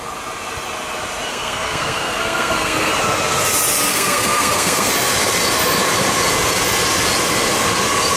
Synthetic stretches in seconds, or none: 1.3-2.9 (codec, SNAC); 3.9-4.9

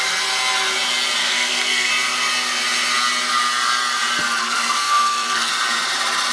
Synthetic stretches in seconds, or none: 1.2-1.9 (codec, SNAC); 4.4-5.5